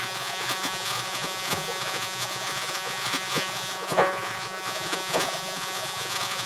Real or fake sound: fake